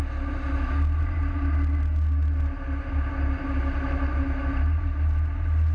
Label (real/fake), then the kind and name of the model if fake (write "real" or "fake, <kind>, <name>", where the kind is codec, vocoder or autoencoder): real